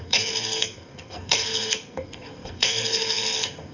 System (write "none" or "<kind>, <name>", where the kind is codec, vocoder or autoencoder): codec, SNAC